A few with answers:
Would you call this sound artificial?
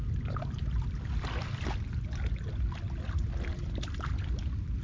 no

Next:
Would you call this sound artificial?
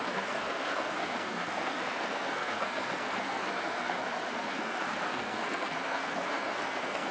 yes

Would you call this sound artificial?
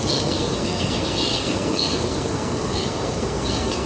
yes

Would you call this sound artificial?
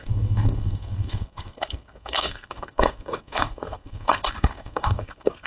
yes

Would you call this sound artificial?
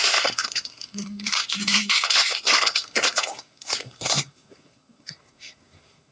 yes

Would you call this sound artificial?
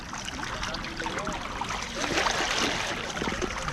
no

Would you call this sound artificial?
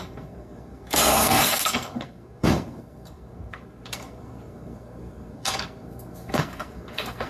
yes